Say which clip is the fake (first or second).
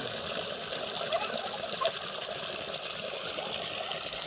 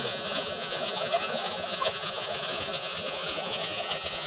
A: second